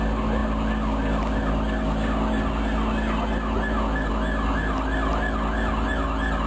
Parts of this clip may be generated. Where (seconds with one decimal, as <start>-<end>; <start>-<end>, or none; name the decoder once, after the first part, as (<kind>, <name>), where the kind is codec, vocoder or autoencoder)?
none